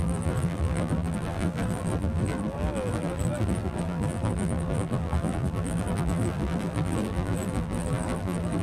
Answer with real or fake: fake